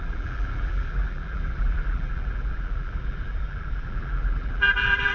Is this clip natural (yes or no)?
no